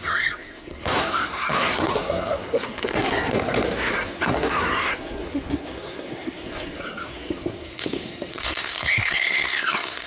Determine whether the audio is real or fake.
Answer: fake